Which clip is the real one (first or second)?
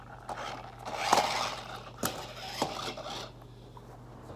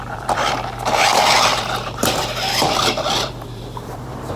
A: first